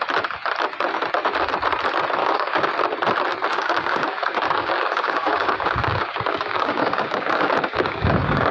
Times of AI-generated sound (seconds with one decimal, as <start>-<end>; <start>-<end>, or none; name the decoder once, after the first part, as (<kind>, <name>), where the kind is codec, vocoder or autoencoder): 2.2-2.7 (codec, DAC); 3.5-8.5